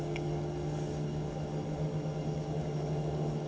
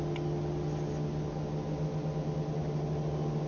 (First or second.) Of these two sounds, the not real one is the first